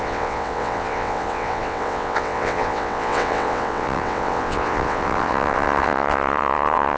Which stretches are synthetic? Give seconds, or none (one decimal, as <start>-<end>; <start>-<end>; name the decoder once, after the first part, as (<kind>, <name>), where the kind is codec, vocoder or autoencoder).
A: 0.0-7.0 (vocoder, WaveNeXt)